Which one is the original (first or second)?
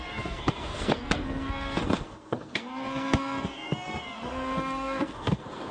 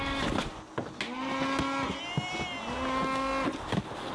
second